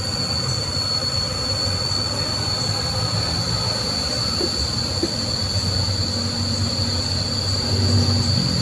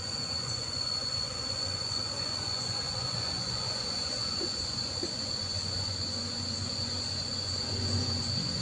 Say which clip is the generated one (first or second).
second